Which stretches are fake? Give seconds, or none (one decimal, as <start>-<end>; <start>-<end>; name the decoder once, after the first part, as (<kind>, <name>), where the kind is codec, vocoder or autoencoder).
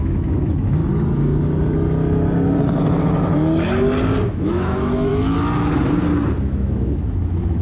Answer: 0.0-0.8 (autoencoder, DAC-VAE); 4.3-5.1; 6.4-7.6